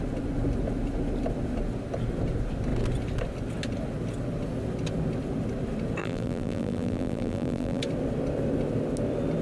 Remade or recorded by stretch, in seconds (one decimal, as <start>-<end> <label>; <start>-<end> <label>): 0.0-6.0 recorded; 6.0-7.8 remade; 7.8-9.4 recorded